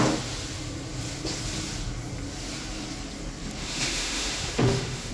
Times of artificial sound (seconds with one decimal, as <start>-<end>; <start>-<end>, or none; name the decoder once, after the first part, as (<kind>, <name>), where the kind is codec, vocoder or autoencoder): 3.6-5.1 (autoencoder, DAC-VAE)